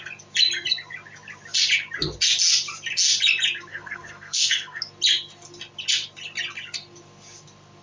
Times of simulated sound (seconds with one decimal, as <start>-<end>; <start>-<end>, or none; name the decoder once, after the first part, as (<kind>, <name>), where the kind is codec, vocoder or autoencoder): 3.7-4.8 (codec, SNAC)